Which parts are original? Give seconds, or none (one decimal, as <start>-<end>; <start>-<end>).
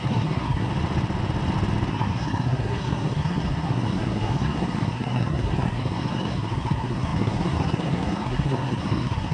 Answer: 0.7-1.9